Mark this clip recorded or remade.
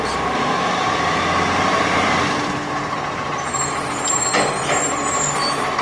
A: recorded